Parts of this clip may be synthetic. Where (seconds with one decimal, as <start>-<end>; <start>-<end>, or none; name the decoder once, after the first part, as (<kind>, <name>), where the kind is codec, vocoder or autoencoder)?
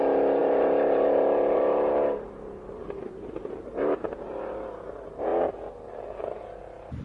0.0-5.3 (vocoder, BigVGAN v2); 6.2-7.0